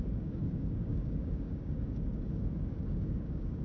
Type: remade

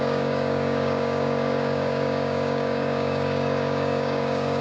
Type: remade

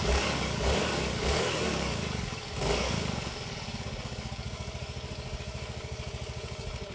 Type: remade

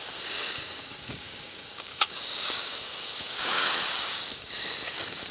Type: remade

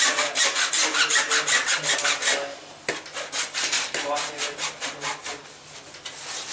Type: recorded